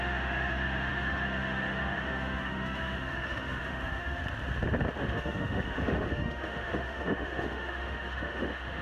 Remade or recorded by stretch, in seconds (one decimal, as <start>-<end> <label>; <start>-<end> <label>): 0.0-4.2 remade; 4.2-5.0 recorded; 5.0-8.8 remade